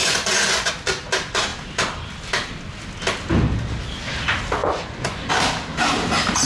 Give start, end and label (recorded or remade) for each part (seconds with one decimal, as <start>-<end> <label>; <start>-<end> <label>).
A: 0.0-0.7 remade; 0.7-4.6 recorded; 4.6-5.3 remade; 5.3-6.5 recorded